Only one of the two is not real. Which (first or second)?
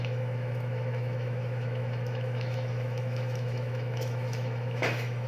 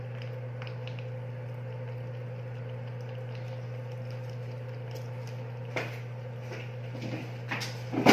first